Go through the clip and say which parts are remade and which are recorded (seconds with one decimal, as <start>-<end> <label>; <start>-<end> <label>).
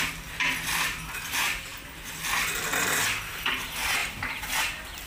0.0-5.1 recorded